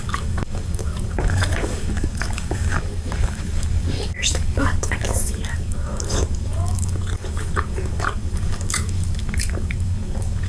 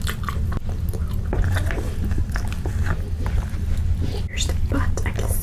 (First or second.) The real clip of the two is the second